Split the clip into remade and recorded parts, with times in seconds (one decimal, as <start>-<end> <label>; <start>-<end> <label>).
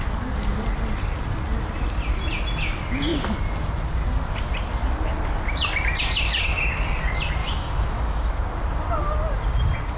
0.0-7.4 recorded; 7.4-8.3 remade; 8.3-10.0 recorded